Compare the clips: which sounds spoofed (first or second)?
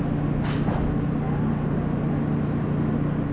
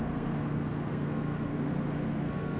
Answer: second